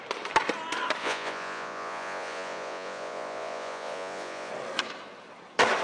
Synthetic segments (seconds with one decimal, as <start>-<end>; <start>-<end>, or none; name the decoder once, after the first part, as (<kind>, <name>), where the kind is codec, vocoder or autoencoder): 1.0-4.5 (vocoder, Vocos)